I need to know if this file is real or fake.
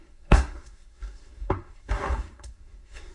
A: fake